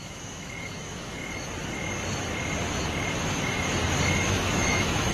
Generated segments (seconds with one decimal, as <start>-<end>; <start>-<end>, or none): 0.0-1.2; 4.2-5.1